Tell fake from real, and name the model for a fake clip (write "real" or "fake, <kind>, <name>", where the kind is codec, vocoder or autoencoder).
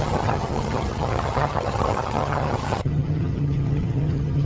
fake, vocoder, HiFi-GAN